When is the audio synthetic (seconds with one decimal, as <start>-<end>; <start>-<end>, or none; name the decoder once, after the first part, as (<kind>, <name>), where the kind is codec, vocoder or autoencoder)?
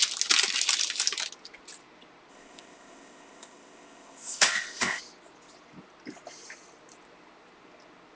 2.3-5.0 (codec, ZipCodec)